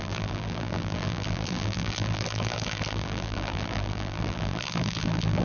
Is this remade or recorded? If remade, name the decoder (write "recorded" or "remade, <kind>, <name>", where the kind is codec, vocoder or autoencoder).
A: remade, vocoder, BigVGAN v2